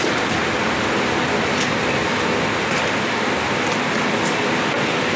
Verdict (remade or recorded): recorded